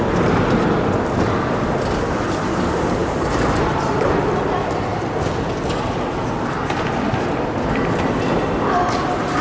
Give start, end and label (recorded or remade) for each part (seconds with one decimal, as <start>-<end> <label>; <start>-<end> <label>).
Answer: 0.0-3.0 recorded; 3.0-4.2 remade; 4.2-9.4 recorded